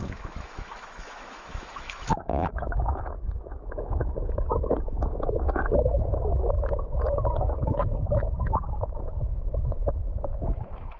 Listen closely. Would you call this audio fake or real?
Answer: fake